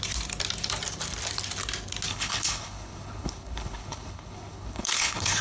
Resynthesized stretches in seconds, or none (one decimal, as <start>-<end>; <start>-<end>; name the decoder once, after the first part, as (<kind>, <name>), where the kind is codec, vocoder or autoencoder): 2.1-5.4 (codec, HILCodec)